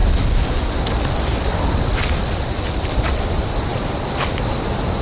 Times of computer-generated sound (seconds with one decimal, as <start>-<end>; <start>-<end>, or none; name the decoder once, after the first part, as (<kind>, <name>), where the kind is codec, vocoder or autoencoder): 0.0-3.0 (vocoder, BigVGAN v2); 3.7-4.4